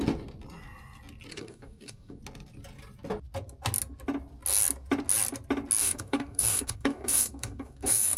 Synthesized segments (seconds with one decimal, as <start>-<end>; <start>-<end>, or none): 1.3-2.2; 5.8-8.2